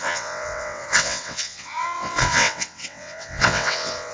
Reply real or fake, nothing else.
fake